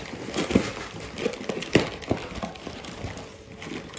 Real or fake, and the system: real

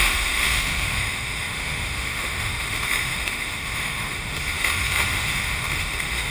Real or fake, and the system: fake, autoencoder, DAC-VAE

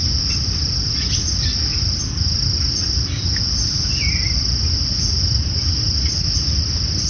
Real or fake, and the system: real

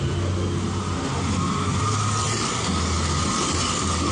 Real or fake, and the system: real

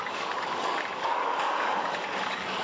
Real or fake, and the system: fake, codec, DAC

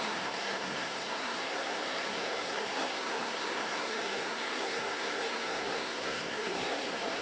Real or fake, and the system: fake, codec, SNAC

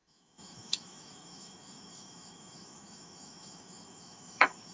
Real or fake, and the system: fake, autoencoder, DAC-VAE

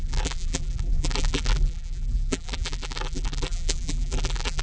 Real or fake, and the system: fake, vocoder, BigVGAN v2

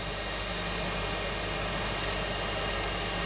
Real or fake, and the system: real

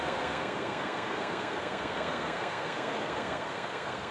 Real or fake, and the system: fake, codec, SNAC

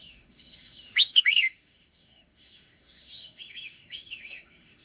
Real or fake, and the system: fake, autoencoder, DAC-VAE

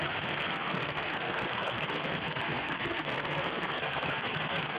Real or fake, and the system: fake, codec, SNAC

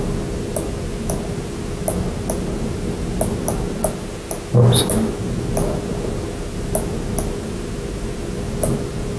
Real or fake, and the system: real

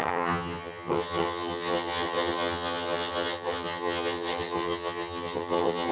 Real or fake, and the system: fake, vocoder, HiFi-GAN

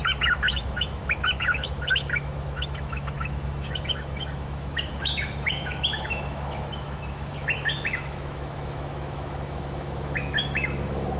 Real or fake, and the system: fake, autoencoder, DAC-VAE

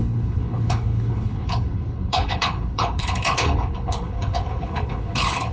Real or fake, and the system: fake, codec, HILCodec